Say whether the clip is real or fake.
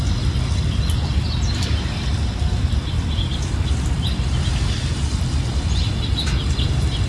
real